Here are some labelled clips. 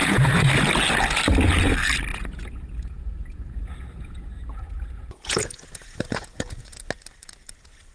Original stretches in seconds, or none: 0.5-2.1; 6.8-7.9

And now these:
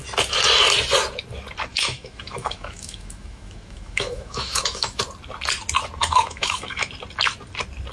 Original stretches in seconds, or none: 0.0-1.7; 5.0-6.0; 6.9-7.9

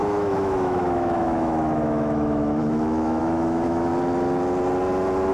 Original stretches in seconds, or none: 3.9-5.3

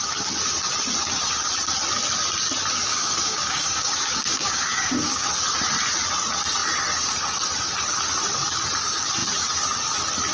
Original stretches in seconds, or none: 0.0-2.9; 5.3-10.3

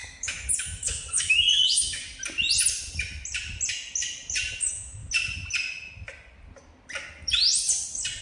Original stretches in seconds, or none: 2.0-4.6; 5.0-8.2

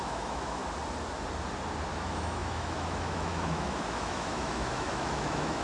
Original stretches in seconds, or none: 0.6-1.9

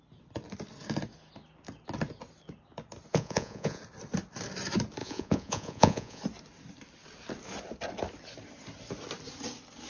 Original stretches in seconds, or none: 0.0-3.1; 3.8-5.0; 6.2-9.9

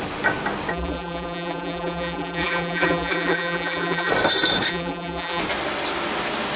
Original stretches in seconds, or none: 0.0-0.7; 4.1-4.7; 5.4-6.6